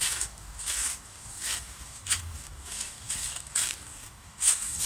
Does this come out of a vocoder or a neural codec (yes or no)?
yes